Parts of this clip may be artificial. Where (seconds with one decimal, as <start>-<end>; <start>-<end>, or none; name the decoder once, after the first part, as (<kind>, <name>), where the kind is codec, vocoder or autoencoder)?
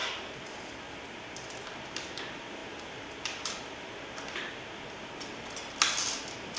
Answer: none